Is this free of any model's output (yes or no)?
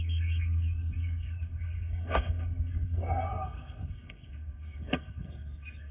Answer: no